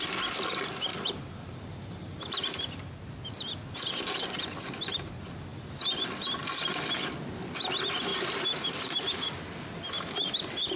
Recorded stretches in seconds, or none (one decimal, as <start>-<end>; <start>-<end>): 0.0-8.1; 9.5-10.8